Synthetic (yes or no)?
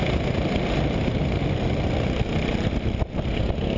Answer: no